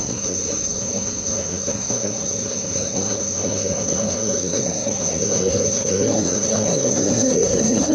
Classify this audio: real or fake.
fake